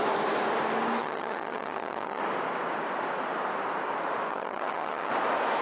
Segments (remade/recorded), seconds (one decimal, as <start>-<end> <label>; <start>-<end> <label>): 0.0-1.0 recorded; 1.0-2.2 remade; 2.2-4.3 recorded; 4.3-5.1 remade; 5.1-5.6 recorded